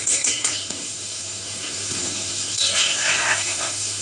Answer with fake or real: fake